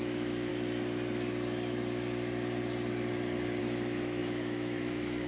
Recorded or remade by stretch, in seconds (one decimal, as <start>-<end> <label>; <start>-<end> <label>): 0.0-0.5 remade; 0.5-3.6 recorded; 3.6-5.3 remade